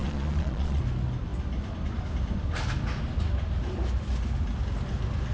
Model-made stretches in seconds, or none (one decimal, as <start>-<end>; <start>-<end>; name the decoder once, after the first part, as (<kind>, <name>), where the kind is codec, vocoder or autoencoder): 0.0-0.8 (vocoder, Vocos)